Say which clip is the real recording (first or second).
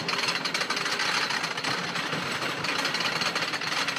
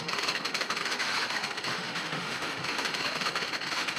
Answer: first